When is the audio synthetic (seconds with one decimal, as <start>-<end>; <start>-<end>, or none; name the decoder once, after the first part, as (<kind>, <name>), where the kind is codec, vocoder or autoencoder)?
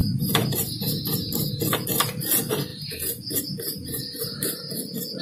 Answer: 0.0-1.5 (vocoder, BigVGAN v2); 2.7-5.2